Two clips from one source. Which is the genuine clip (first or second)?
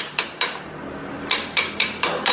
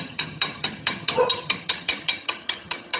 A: first